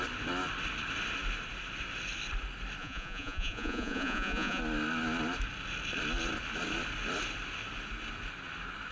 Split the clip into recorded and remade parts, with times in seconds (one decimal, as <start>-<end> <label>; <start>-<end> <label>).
0.0-2.8 recorded; 2.8-4.6 remade; 4.6-8.9 recorded